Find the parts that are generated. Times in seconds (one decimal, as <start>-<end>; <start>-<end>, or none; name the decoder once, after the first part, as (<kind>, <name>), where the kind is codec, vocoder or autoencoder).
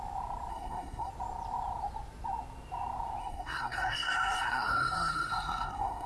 0.5-1.1 (codec, SNAC); 3.2-6.1